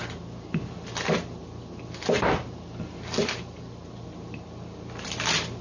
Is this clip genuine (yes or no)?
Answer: yes